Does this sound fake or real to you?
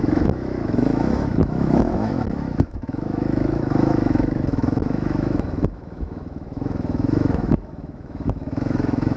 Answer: fake